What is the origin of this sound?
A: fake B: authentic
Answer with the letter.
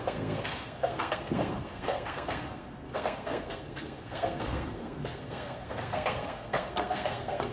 A